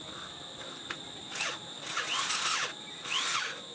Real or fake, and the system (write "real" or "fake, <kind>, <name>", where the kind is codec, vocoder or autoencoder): real